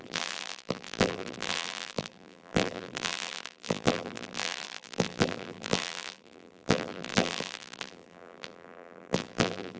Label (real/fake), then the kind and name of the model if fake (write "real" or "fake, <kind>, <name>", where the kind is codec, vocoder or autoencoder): fake, vocoder, BigVGAN v2